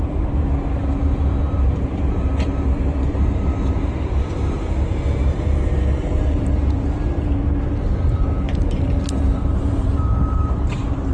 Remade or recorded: remade